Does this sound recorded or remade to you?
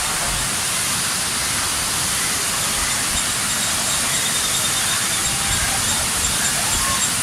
recorded